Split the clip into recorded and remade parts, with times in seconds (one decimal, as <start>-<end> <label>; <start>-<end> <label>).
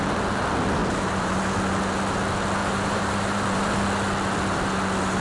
0.0-0.8 recorded; 0.8-1.4 remade; 1.4-2.6 recorded; 2.6-3.7 remade; 3.7-5.2 recorded